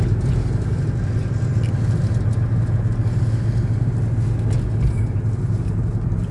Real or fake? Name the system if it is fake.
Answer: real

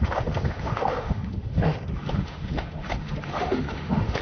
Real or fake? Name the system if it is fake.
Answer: fake, autoencoder, DAC-VAE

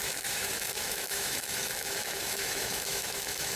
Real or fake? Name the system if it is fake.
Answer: fake, autoencoder, DAC-VAE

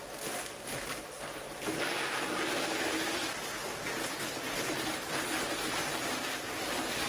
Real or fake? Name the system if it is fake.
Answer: real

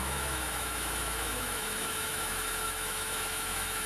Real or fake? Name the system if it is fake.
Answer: fake, autoencoder, DAC-VAE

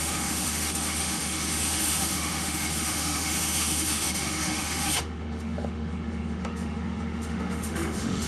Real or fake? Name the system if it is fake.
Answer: fake, autoencoder, DAC-VAE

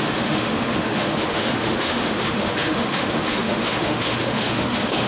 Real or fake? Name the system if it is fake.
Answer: fake, autoencoder, DAC-VAE